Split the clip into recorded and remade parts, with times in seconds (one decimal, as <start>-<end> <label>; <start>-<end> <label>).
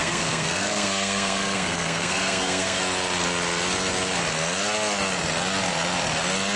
0.0-2.8 remade; 2.8-6.6 recorded